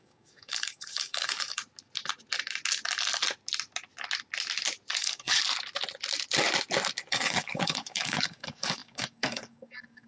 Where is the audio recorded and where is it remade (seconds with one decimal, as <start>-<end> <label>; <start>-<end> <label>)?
0.0-1.6 remade; 1.6-5.0 recorded; 5.0-5.4 remade; 5.4-7.1 recorded; 7.1-10.1 remade